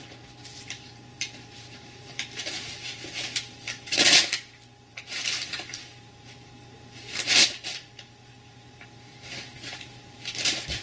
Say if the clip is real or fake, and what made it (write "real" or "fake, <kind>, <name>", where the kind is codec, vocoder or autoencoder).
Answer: fake, vocoder, BigVGAN v2